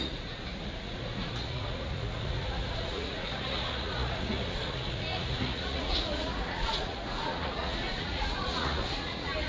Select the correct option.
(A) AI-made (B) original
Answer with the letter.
A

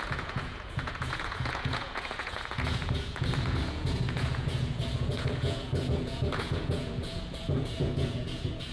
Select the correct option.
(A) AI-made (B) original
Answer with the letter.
A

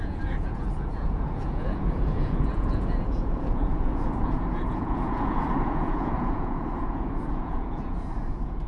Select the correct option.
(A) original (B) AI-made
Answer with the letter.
B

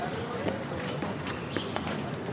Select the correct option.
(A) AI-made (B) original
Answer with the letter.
A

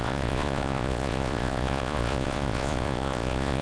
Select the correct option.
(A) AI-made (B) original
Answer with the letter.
A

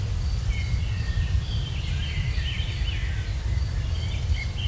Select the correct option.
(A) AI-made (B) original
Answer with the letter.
B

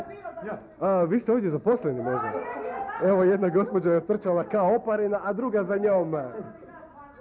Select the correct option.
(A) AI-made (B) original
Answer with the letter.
B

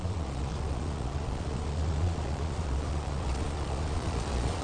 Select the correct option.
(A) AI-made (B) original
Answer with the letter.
A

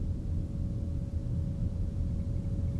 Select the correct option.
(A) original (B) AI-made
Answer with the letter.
A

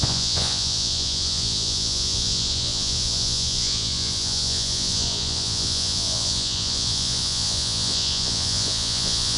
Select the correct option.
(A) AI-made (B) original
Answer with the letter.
A